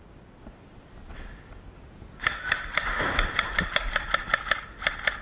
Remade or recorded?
recorded